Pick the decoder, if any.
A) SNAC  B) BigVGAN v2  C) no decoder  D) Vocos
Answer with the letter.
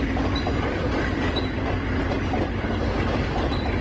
C